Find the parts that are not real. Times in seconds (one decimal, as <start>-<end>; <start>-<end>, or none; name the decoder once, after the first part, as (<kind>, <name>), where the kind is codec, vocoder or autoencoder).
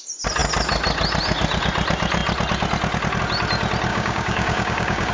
3.9-5.1 (codec, DAC)